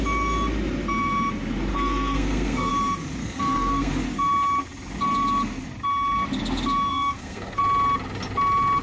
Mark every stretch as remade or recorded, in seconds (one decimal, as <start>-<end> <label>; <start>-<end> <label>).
0.0-1.7 recorded; 1.7-2.7 remade; 2.7-3.2 recorded; 3.2-3.9 remade; 3.9-6.9 recorded; 6.9-7.6 remade; 7.6-8.8 recorded